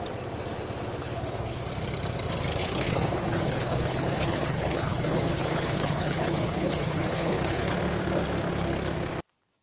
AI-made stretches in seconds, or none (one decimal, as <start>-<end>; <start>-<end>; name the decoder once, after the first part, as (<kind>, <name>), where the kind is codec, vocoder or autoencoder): 1.0-1.6 (codec, HILCodec); 2.6-7.7